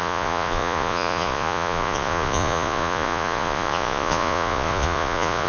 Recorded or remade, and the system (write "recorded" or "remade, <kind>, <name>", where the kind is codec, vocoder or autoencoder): remade, vocoder, Vocos